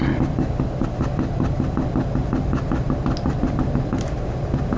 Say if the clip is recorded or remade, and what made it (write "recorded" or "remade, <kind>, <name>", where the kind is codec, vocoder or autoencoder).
recorded